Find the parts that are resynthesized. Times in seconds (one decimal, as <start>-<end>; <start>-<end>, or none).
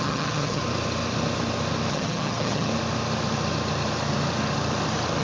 0.0-0.6; 1.9-2.7